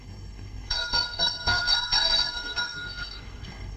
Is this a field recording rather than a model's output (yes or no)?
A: no